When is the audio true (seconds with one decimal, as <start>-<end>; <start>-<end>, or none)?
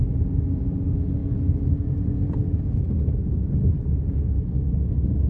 0.0-5.3